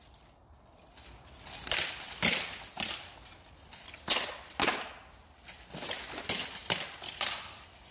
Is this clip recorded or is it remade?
recorded